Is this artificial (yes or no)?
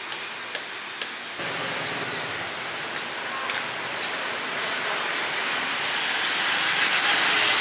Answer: no